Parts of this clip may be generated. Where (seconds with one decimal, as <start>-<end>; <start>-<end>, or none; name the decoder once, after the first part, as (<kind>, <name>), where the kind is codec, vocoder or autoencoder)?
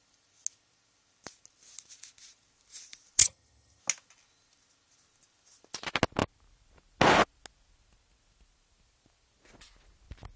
3.2-3.8 (vocoder, HiFi-GAN)